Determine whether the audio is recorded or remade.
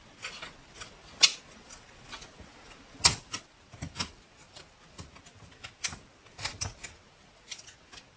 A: recorded